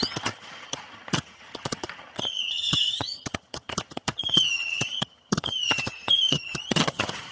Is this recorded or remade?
remade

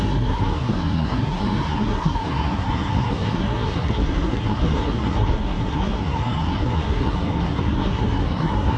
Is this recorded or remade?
remade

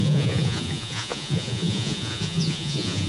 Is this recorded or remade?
remade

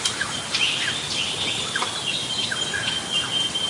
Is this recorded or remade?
recorded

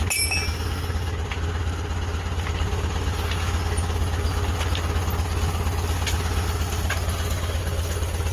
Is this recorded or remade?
recorded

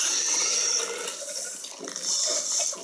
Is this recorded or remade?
recorded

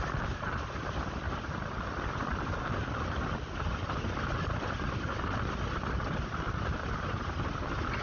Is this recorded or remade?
recorded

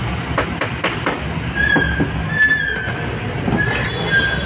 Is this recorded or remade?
recorded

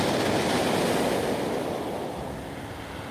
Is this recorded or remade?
recorded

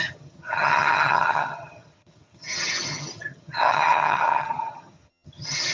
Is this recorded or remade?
remade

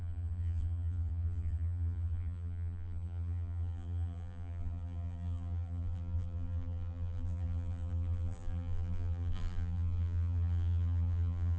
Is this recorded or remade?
remade